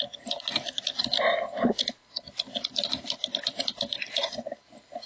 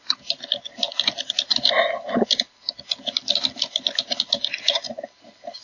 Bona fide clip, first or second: second